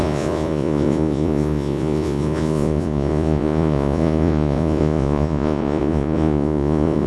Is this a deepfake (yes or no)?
yes